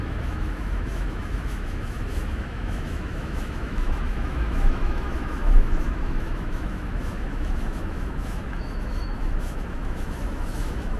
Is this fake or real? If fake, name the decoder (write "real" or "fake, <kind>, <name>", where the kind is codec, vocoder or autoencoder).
fake, autoencoder, DAC-VAE